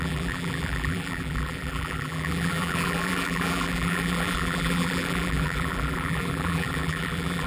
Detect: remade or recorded remade